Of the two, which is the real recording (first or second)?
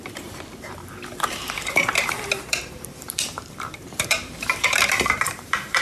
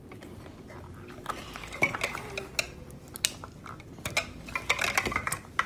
second